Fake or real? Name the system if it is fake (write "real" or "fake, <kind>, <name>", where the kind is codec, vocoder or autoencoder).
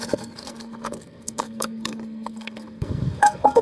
fake, codec, SNAC